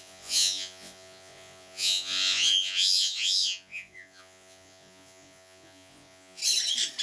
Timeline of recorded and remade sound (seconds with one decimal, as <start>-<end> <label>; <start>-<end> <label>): 0.0-6.4 remade; 6.4-7.0 recorded